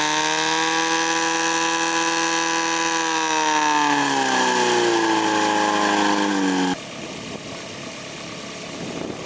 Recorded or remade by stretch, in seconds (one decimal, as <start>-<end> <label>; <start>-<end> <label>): 0.0-9.3 recorded